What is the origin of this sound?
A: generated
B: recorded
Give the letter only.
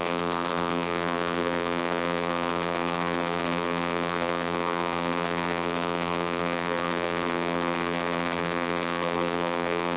A